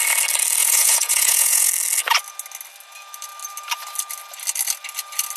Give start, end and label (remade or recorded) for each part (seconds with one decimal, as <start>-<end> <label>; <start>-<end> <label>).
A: 0.0-0.6 recorded; 0.6-1.7 remade; 1.7-5.4 recorded